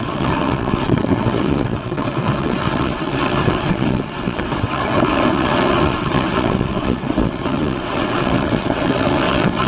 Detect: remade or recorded remade